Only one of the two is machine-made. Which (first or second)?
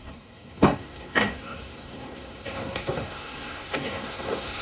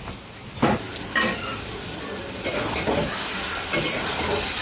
first